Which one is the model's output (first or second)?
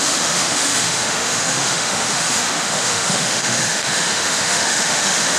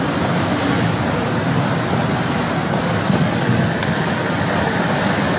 first